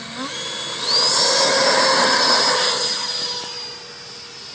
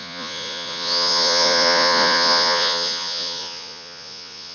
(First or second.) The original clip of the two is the first